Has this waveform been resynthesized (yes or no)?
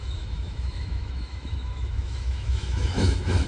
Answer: yes